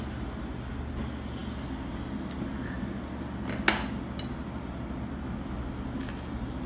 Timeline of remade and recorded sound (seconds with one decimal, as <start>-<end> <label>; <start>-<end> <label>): 0.0-6.7 recorded